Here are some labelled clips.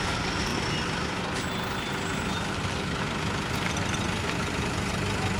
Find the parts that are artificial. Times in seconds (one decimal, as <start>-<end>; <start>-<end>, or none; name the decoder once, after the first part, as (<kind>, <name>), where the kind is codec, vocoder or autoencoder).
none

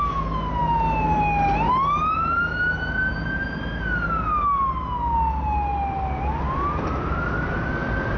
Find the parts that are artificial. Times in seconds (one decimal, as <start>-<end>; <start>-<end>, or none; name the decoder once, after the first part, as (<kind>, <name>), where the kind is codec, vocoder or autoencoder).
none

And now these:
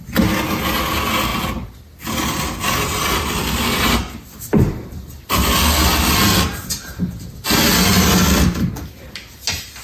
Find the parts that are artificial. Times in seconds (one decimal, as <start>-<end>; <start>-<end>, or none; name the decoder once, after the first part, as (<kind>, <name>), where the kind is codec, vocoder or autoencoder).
none

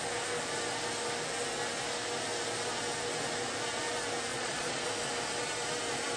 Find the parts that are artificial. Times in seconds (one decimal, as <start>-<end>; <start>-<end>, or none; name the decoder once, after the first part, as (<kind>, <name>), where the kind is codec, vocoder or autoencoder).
4.3-4.9 (vocoder, Vocos)